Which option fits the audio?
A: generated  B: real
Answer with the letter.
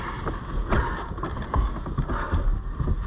B